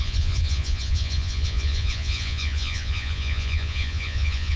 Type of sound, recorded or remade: remade